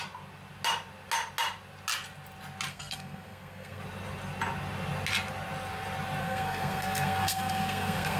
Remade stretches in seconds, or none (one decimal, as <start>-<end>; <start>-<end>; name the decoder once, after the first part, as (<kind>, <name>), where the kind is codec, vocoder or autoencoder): 2.7-3.8 (codec, SNAC); 6.2-8.2